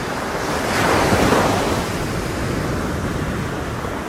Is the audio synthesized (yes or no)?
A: no